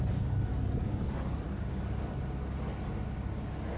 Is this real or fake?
real